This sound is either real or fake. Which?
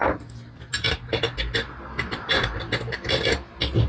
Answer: real